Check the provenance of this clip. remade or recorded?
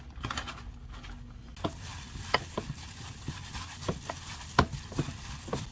recorded